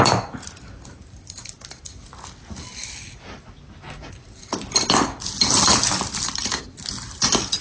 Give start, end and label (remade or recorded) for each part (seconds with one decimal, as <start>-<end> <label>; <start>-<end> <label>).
0.0-7.6 recorded